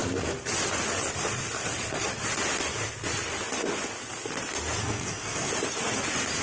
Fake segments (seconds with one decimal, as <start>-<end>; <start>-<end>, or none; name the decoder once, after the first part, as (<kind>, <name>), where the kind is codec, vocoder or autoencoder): 4.8-5.5 (codec, SNAC)